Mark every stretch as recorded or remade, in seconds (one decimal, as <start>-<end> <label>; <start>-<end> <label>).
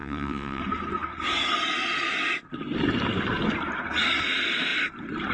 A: 0.0-0.6 remade; 0.6-5.3 recorded